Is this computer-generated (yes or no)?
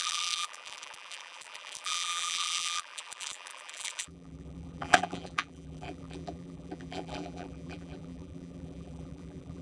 yes